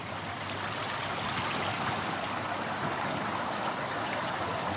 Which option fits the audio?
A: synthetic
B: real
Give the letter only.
B